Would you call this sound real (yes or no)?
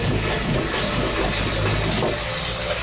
yes